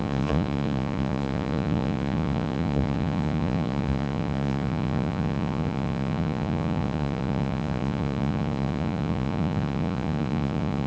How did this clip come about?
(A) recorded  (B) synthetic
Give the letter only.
B